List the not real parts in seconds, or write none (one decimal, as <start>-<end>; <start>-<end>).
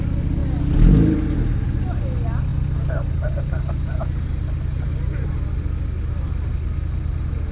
none